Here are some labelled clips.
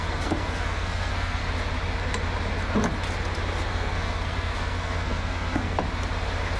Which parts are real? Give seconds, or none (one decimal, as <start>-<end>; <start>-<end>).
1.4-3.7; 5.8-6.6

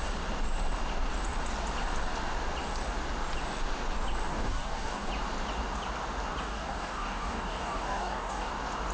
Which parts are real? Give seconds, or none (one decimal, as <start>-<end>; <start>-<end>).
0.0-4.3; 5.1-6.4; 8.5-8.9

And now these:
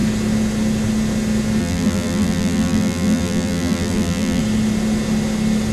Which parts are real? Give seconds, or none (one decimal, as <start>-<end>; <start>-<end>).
0.0-1.6; 4.4-5.7